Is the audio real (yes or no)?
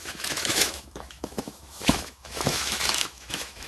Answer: no